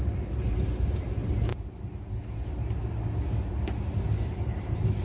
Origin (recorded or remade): recorded